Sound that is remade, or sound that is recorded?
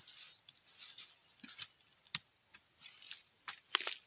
recorded